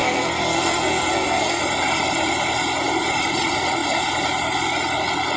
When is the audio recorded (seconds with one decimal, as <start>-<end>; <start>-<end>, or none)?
1.6-5.4